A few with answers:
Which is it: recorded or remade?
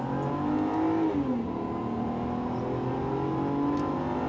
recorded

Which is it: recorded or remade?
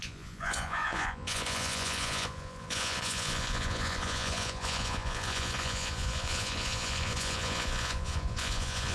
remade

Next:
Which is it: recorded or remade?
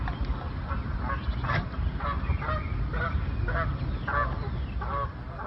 recorded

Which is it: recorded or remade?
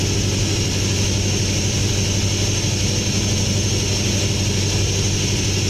recorded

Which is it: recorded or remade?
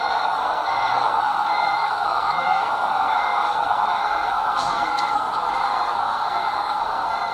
remade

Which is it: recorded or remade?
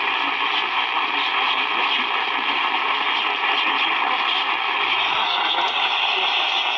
recorded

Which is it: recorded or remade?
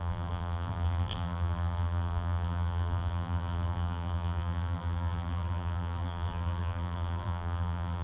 remade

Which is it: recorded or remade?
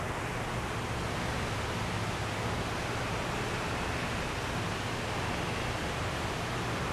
recorded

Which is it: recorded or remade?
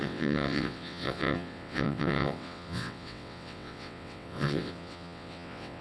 remade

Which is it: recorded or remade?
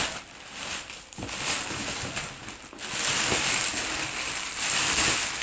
recorded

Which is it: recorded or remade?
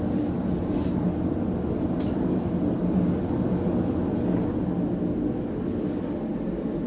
recorded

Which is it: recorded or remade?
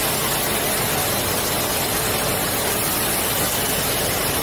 recorded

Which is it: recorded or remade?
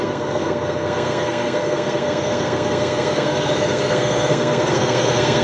remade